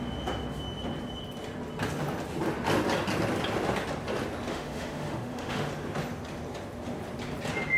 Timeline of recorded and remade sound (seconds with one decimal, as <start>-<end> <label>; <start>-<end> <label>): 0.0-4.5 recorded; 4.5-5.7 remade; 5.7-7.8 recorded

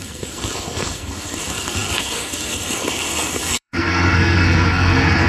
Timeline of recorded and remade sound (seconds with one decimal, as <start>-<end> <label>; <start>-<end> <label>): 0.0-5.3 remade